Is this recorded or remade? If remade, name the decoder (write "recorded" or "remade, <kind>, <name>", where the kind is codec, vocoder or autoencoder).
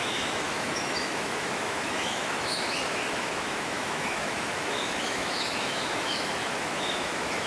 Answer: remade, autoencoder, DAC-VAE